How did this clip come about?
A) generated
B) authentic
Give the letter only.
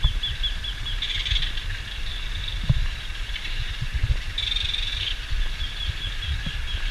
B